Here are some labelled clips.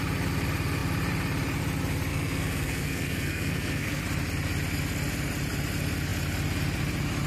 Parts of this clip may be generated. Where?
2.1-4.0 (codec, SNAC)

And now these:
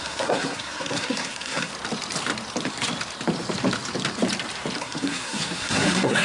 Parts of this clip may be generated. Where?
0.0-1.7 (codec, SNAC); 4.8-6.2